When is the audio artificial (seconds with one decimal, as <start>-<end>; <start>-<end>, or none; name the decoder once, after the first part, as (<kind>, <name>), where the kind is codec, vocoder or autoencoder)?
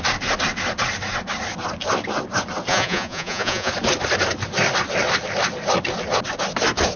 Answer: 2.7-3.7 (vocoder, Vocos)